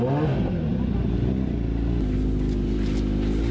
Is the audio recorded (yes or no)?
yes